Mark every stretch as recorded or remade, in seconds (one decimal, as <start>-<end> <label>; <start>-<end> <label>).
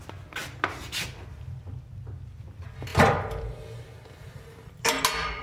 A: 0.0-0.4 recorded; 0.4-1.6 remade; 1.6-2.9 recorded; 2.9-3.4 remade; 3.4-5.4 recorded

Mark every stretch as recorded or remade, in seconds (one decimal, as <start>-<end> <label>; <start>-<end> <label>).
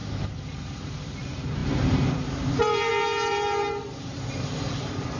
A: 0.0-5.2 remade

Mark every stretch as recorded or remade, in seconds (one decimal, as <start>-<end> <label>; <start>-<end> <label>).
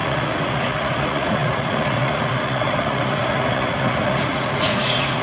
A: 0.0-5.2 remade